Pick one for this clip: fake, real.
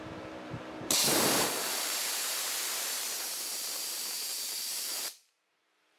fake